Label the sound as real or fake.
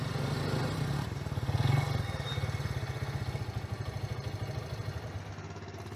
real